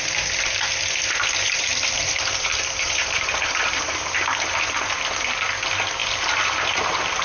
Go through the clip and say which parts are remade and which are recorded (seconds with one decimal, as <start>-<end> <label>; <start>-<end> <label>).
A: 0.0-1.7 recorded; 1.7-3.9 remade; 3.9-6.0 recorded; 6.0-6.6 remade; 6.6-7.2 recorded